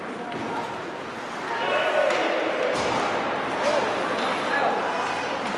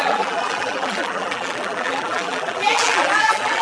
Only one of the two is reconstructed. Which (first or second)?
second